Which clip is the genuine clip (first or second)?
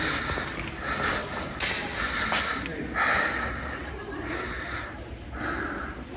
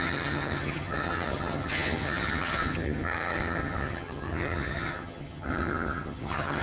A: first